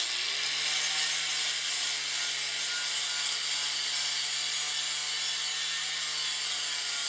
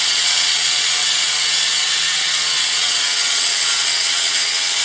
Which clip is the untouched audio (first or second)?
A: first